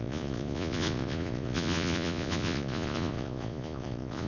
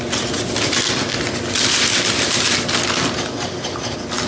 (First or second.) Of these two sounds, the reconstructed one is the first